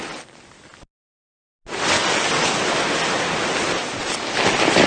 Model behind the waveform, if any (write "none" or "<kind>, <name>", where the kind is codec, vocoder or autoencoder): none